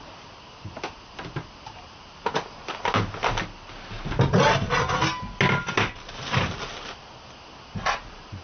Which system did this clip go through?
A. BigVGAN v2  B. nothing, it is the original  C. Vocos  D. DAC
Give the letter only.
B